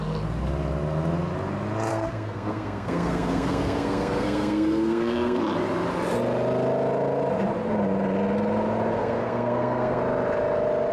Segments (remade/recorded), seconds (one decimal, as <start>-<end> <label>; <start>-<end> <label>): 0.0-1.9 recorded; 1.9-5.4 remade; 5.4-9.0 recorded; 9.0-10.0 remade; 10.0-10.9 recorded